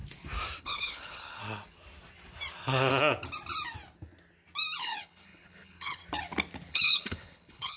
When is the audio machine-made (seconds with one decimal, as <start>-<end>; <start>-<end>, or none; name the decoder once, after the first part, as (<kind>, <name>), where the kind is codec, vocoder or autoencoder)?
0.6-1.4 (codec, HILCodec); 4.8-6.0; 6.7-7.8

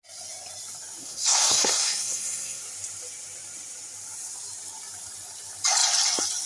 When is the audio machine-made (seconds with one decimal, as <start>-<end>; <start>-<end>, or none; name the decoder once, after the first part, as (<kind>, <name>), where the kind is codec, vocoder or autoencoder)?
1.0-2.6 (codec, SNAC)

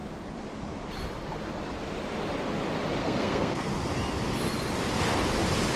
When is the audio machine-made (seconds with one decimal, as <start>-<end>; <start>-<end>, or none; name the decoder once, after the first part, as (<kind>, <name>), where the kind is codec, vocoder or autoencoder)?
3.0-3.7 (codec, SNAC)

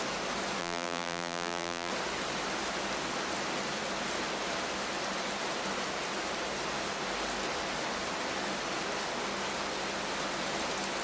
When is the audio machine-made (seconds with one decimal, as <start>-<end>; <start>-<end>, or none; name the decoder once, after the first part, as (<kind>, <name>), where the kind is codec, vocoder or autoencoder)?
0.6-1.9 (vocoder, BigVGAN v2)

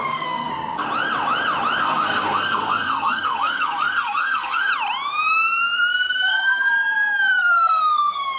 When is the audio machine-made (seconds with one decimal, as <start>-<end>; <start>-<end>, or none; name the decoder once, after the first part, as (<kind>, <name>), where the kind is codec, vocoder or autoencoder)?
0.0-0.5 (codec, SNAC); 1.8-4.7; 5.9-6.7; 7.4-8.4